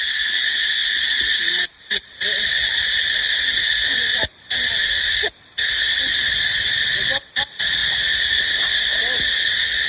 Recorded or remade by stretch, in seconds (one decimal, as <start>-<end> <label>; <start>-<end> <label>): 0.0-9.9 recorded